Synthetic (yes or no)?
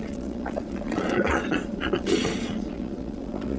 yes